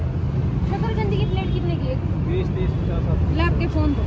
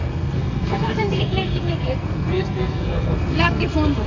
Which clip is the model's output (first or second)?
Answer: second